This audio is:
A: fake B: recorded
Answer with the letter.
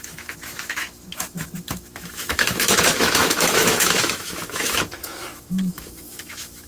A